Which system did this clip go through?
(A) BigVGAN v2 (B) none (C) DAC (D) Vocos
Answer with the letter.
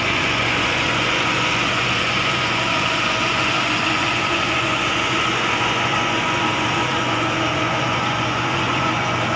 D